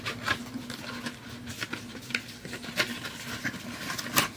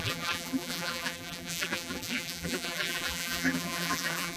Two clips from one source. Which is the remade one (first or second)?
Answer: second